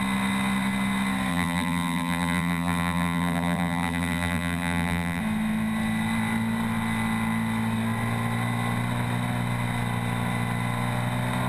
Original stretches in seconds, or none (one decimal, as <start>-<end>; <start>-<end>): 0.0-1.3; 5.2-11.5